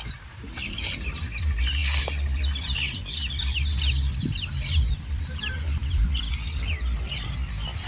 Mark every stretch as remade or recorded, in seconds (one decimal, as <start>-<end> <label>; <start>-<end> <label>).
0.0-7.9 recorded